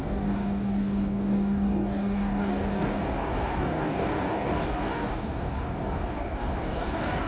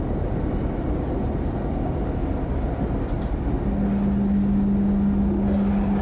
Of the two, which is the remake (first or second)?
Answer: first